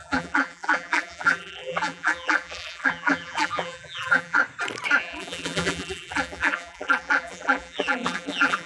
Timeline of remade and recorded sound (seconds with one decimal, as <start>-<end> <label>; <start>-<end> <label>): 0.0-4.4 remade; 4.4-5.0 recorded; 5.0-8.7 remade